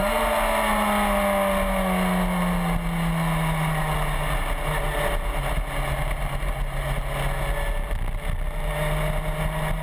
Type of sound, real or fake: real